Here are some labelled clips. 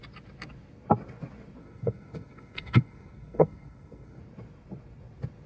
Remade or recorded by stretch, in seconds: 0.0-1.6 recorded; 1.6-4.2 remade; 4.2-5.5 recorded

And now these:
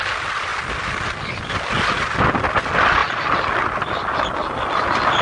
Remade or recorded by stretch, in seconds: 0.0-5.2 recorded

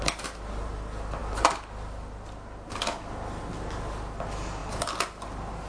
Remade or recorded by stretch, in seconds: 0.0-5.7 recorded

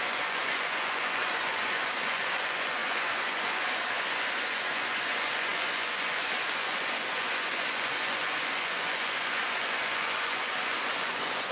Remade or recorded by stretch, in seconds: 0.0-11.5 remade

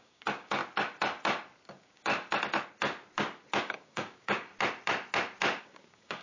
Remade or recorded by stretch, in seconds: 0.0-0.6 remade; 0.6-1.7 recorded; 1.7-2.1 remade; 2.1-3.6 recorded; 3.6-4.5 remade; 4.5-5.6 recorded; 5.6-6.2 remade